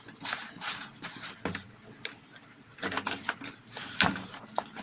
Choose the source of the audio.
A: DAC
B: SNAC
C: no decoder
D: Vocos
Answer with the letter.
C